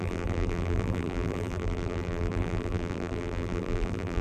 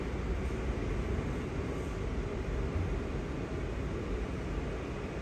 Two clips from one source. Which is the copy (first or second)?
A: first